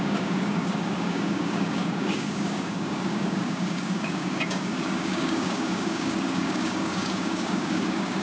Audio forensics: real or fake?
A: fake